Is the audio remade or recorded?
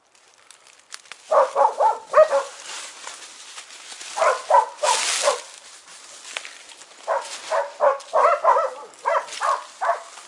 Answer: recorded